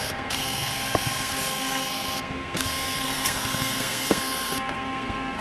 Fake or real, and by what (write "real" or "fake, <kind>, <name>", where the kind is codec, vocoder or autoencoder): fake, codec, SNAC